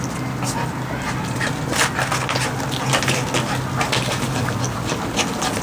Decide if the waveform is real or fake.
real